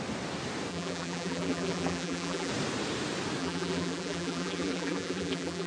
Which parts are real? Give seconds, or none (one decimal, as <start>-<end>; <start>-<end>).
0.0-0.7; 2.5-3.4